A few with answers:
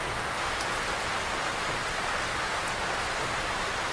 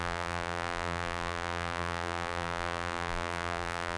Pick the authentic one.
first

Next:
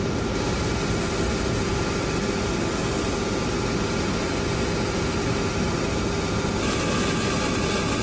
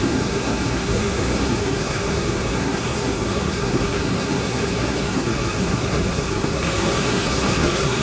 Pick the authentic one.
first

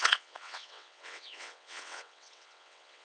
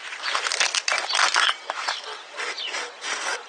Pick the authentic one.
second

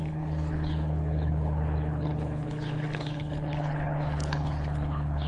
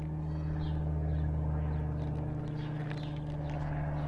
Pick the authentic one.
second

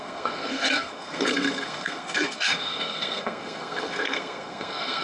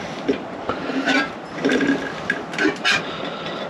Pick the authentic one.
second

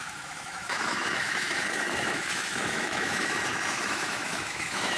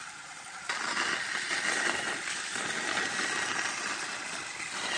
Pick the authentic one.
second